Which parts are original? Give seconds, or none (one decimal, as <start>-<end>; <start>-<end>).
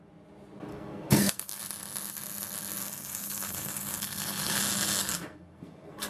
0.0-0.7; 1.6-2.8; 4.6-5.0